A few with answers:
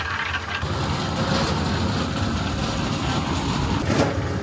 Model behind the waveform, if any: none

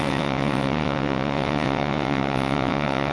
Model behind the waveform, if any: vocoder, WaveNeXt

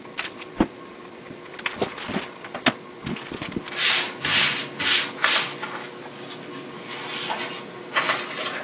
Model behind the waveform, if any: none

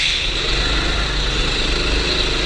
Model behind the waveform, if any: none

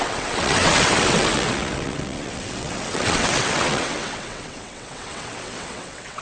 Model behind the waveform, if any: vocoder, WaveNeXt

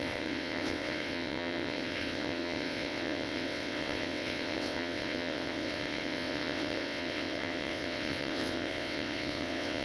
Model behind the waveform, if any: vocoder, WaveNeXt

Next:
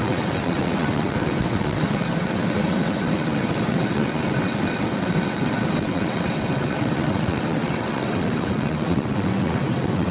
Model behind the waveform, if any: vocoder, WaveNeXt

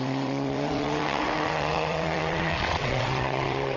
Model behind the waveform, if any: vocoder, WaveNeXt